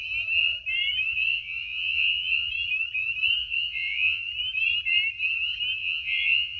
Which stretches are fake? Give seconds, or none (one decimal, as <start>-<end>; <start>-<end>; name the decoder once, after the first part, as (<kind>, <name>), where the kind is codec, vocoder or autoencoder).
1.3-2.5 (vocoder, Vocos); 3.4-4.2; 5.8-6.6